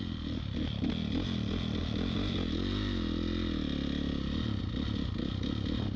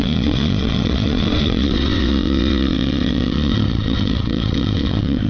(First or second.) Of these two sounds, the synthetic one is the second